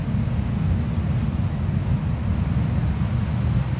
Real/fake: real